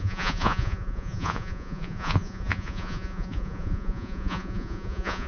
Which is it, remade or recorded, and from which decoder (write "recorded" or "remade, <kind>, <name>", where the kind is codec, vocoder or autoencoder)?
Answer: remade, vocoder, Vocos